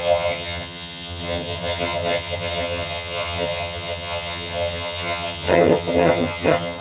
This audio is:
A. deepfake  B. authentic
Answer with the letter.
A